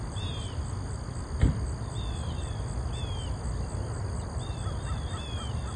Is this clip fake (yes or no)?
no